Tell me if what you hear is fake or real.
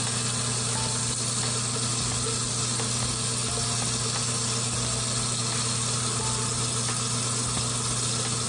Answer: real